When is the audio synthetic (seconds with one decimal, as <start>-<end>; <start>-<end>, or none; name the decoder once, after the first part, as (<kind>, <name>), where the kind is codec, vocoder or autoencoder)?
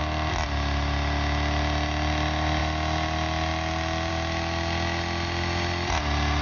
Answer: none